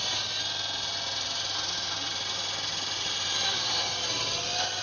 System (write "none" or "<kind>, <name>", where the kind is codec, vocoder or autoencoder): none